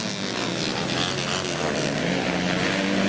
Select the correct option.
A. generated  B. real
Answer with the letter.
B